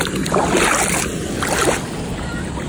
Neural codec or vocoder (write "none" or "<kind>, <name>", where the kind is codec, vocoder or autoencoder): none